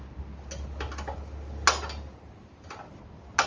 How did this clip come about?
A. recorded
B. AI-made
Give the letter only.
A